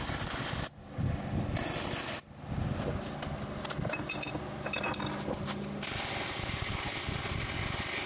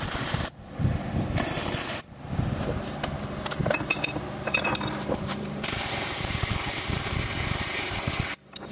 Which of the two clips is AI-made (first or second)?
second